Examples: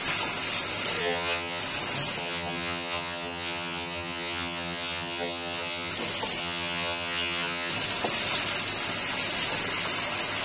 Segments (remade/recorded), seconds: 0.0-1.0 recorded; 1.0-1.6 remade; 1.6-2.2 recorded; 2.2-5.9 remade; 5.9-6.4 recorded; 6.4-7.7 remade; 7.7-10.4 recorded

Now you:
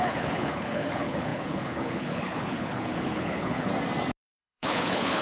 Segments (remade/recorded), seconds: 0.0-3.7 remade; 3.7-4.4 recorded; 4.4-5.2 remade

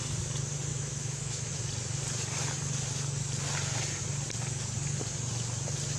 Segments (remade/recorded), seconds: 0.0-0.7 recorded; 0.7-1.6 remade; 1.6-6.0 recorded

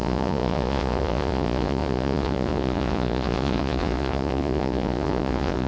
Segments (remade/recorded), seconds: 0.0-5.7 remade

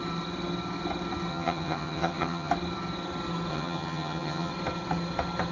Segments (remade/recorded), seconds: 0.0-1.3 recorded; 1.3-2.5 remade; 2.5-3.5 recorded; 3.5-4.5 remade; 4.5-5.5 recorded